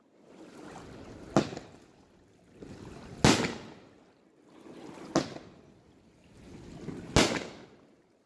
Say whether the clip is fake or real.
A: real